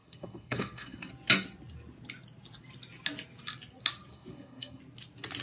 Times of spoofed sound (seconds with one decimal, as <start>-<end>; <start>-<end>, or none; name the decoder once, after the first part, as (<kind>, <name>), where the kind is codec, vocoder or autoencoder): 0.0-1.1 (codec, SNAC); 4.1-4.8